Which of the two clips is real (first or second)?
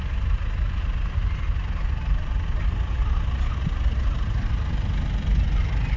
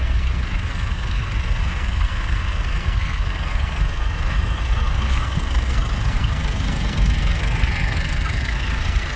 first